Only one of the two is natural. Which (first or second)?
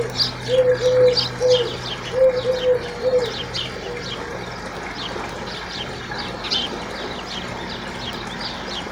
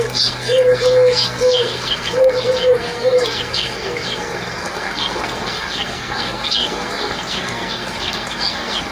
first